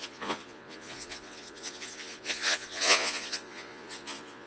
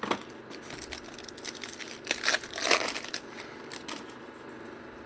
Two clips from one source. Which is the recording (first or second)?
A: second